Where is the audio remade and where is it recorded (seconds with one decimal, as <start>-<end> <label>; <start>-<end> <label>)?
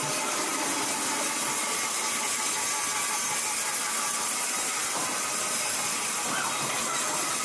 0.0-7.4 recorded